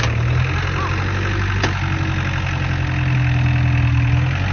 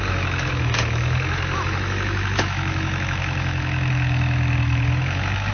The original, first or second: first